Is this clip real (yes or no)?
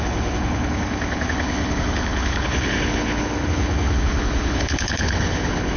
no